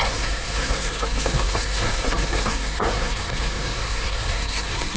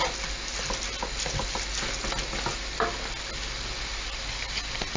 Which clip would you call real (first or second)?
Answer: second